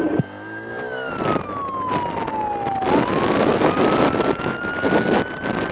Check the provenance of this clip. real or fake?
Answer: real